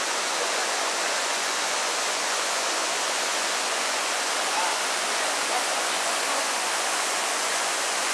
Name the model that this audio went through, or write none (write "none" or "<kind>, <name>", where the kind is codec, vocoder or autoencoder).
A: vocoder, Vocos